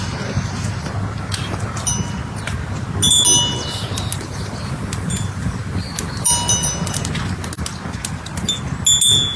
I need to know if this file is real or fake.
real